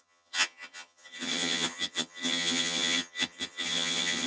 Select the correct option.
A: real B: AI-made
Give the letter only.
B